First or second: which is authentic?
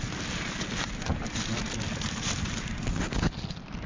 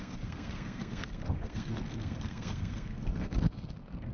first